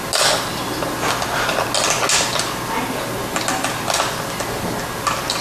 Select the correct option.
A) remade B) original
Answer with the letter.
B